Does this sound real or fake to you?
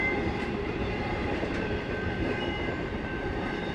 fake